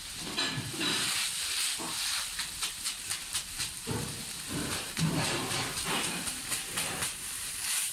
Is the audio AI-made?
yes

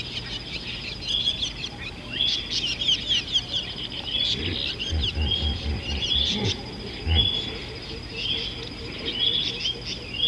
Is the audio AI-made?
no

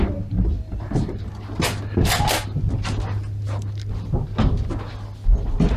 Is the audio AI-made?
no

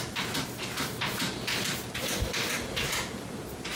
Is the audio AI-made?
no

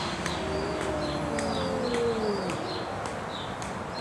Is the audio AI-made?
no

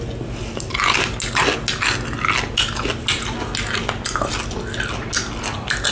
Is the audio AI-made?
no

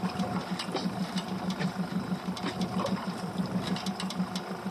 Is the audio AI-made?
yes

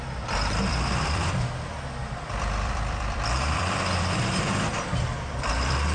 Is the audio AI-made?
yes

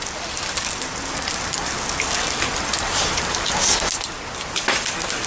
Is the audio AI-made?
yes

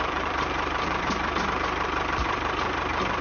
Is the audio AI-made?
yes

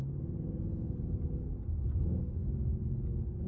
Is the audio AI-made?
no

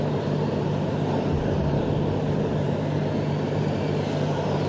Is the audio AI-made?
yes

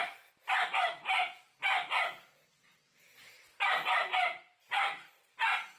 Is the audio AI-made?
no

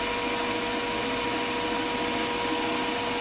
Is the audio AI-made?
no